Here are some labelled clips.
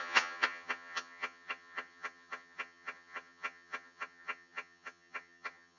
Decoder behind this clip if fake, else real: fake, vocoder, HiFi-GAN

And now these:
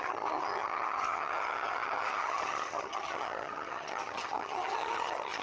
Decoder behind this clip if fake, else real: fake, vocoder, HiFi-GAN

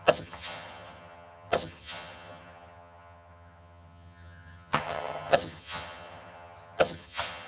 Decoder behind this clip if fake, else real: fake, vocoder, HiFi-GAN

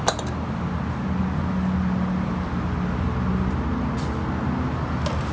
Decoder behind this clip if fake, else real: real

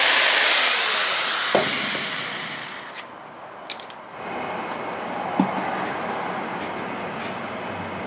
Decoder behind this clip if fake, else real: real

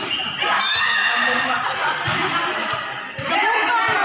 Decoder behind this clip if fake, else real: real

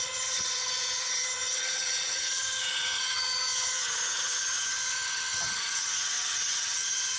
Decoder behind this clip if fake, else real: fake, vocoder, HiFi-GAN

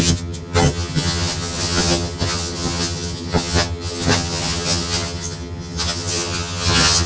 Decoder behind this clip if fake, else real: fake, vocoder, HiFi-GAN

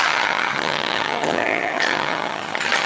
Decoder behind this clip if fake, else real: fake, vocoder, HiFi-GAN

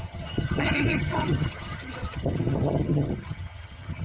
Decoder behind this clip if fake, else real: fake, vocoder, HiFi-GAN